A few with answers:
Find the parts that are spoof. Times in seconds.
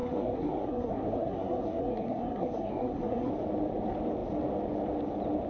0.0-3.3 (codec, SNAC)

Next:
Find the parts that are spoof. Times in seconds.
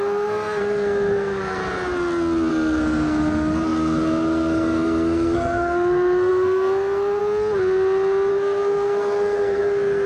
0.0-1.6 (codec, SNAC); 2.5-7.2; 8.3-10.1